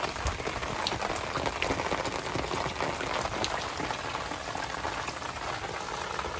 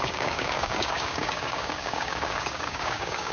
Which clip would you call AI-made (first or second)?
second